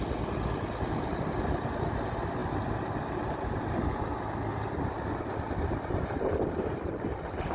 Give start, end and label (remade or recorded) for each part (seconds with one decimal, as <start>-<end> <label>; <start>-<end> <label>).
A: 0.0-7.5 recorded